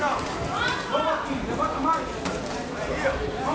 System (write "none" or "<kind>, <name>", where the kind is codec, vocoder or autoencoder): none